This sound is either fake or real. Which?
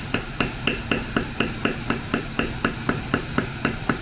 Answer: fake